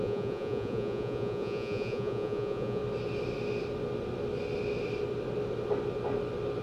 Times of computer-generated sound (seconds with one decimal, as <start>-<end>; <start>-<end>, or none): 0.0-2.8